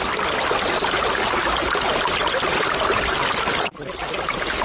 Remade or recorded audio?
recorded